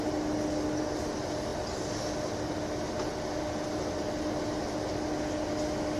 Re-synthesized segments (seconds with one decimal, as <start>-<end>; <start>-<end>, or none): none